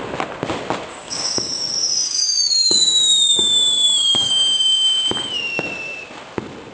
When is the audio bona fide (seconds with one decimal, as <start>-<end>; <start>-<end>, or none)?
0.0-0.9; 4.3-6.7